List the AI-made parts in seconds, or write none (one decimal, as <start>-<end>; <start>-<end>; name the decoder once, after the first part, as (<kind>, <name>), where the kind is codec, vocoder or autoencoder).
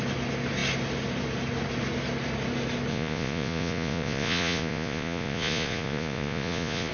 2.9-6.9 (vocoder, Vocos)